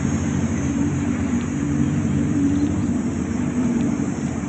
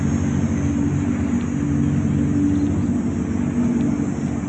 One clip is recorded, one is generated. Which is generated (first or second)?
first